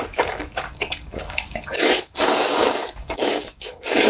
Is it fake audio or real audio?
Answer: fake